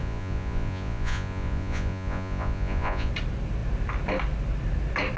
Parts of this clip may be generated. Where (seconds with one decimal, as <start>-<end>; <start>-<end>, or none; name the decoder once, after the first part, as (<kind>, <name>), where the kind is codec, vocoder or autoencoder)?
0.0-3.1 (vocoder, Vocos)